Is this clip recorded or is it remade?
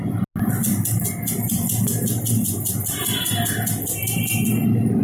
recorded